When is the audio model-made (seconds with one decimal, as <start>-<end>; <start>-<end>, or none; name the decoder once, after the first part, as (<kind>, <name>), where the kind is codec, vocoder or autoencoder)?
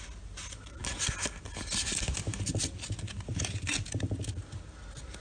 none